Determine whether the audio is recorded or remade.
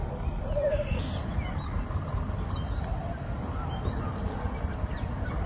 recorded